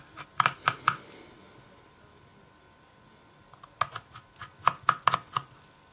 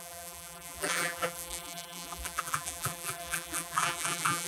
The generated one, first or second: second